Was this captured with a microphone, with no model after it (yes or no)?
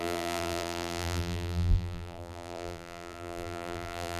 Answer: no